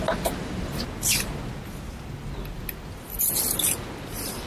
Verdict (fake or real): real